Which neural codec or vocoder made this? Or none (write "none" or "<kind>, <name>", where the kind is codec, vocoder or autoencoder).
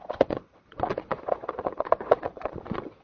vocoder, Vocos